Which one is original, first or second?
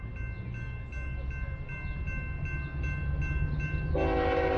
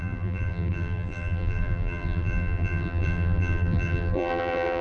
first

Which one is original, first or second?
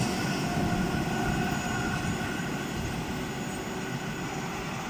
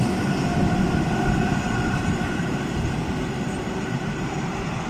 first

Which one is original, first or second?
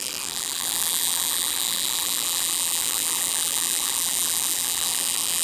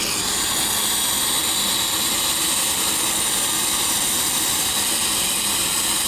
second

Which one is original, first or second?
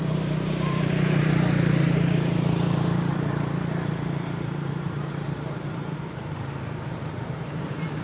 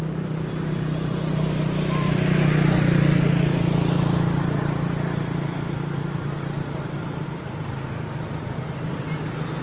second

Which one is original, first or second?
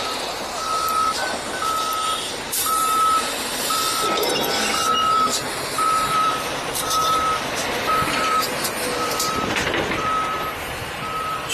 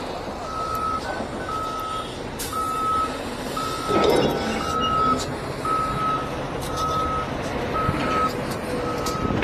second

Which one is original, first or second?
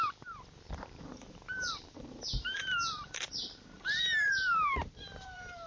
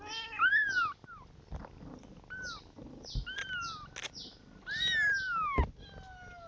second